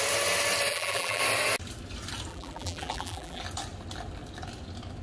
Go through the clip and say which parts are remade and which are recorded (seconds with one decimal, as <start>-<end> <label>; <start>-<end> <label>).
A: 0.0-0.7 recorded; 0.7-1.2 remade; 1.2-2.3 recorded; 2.3-3.4 remade; 3.4-5.0 recorded